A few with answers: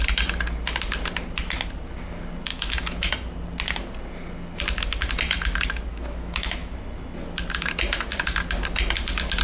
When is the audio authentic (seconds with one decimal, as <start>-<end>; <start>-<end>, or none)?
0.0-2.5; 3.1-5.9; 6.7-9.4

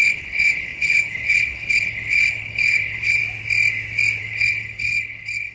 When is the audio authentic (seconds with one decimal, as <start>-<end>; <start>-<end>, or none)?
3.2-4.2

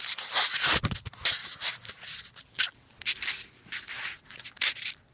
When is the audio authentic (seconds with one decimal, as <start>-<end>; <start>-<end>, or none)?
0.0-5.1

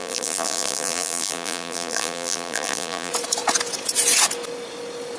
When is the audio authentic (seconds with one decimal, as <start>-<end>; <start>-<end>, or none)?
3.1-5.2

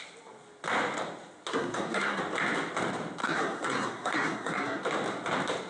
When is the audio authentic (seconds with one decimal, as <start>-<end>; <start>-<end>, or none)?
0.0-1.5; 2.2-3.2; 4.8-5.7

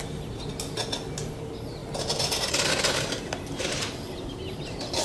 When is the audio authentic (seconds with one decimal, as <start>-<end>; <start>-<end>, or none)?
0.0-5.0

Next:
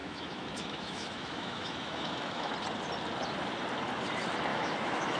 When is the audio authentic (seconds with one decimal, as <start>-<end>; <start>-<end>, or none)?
2.5-4.5

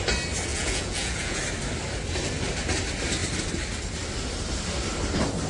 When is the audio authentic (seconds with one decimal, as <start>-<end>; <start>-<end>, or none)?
0.0-0.5; 1.4-5.5